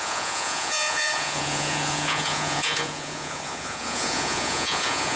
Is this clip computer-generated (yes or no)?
yes